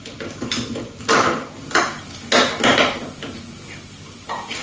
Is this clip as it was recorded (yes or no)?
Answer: yes